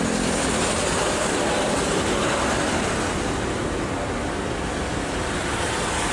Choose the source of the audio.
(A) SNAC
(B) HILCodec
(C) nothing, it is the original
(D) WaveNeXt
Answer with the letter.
C